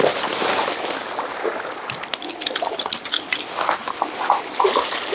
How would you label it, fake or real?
real